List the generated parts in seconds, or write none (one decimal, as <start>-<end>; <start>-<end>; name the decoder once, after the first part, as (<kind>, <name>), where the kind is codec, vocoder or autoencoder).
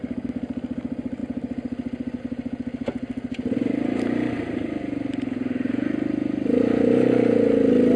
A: none